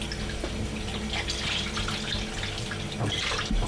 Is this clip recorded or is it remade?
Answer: recorded